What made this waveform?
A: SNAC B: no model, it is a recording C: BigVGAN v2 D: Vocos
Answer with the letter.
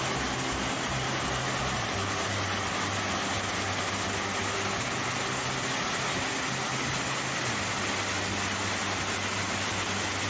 B